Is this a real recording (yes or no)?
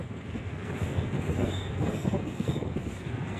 no